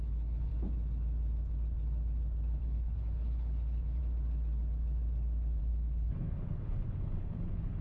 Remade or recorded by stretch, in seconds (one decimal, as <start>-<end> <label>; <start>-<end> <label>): 0.0-0.5 remade; 0.5-2.6 recorded; 2.6-4.0 remade; 4.0-5.6 recorded; 5.6-7.8 remade